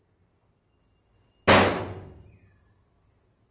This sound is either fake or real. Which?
real